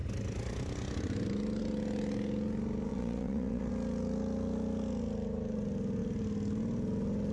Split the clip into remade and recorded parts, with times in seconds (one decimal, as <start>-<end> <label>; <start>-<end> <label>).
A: 0.0-2.9 recorded; 2.9-3.7 remade; 3.7-7.3 recorded